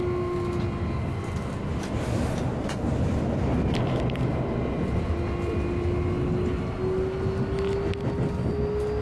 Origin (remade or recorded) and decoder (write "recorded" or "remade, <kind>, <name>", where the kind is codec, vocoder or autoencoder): recorded